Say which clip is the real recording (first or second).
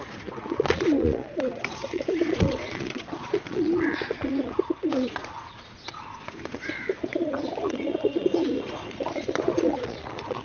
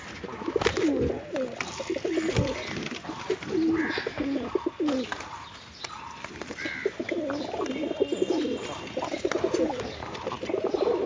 second